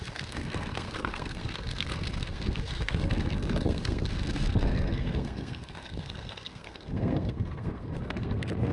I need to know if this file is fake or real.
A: fake